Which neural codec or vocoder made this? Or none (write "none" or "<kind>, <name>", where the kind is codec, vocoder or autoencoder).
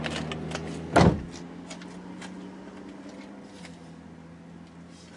none